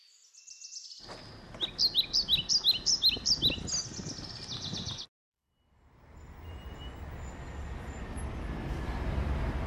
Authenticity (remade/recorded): recorded